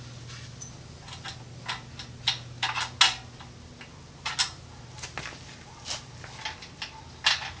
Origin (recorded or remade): recorded